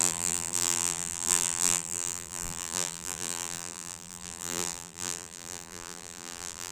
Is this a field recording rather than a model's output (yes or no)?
no